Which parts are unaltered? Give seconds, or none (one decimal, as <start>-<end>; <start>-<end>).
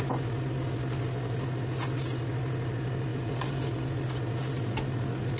0.0-3.1; 3.9-5.4